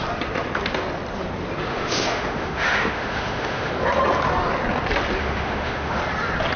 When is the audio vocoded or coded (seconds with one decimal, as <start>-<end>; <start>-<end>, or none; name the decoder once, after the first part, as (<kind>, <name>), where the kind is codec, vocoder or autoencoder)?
1.7-3.7 (autoencoder, DAC-VAE); 5.2-6.0